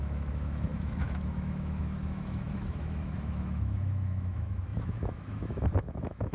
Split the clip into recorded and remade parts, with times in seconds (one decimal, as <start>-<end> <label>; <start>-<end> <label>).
0.0-6.3 remade